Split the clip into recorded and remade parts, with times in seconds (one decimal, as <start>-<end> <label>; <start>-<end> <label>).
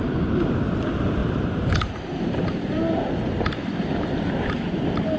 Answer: 0.0-1.2 recorded; 1.2-4.3 remade; 4.3-5.2 recorded